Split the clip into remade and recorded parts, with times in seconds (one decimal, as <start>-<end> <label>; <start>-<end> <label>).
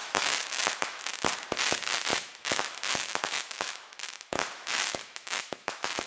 0.0-1.0 remade; 1.0-2.1 recorded; 2.1-6.1 remade